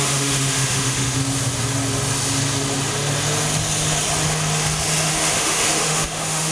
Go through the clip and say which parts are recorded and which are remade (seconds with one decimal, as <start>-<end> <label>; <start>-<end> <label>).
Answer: 0.0-1.2 remade; 1.2-5.1 recorded; 5.1-6.5 remade